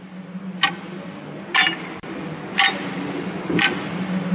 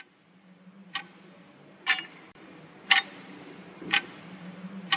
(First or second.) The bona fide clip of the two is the first